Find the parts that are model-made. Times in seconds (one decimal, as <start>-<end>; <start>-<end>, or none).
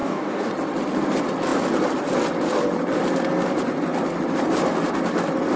0.0-0.5